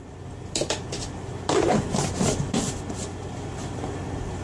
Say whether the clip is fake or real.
real